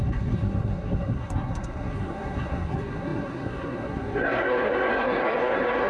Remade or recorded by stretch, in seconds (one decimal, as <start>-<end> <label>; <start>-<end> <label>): 0.0-5.9 remade